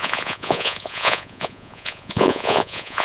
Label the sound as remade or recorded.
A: remade